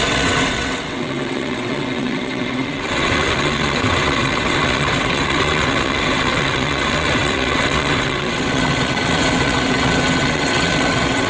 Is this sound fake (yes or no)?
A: yes